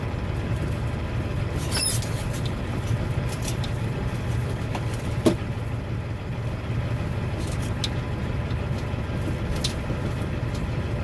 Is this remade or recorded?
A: recorded